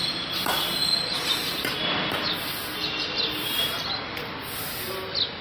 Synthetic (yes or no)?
no